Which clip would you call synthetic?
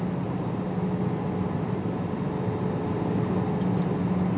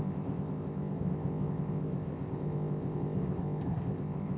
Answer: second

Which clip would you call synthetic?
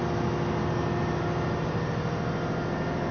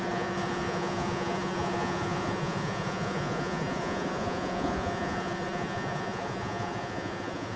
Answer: second